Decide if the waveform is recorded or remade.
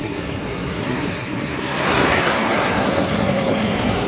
remade